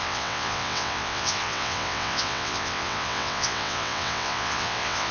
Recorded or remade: remade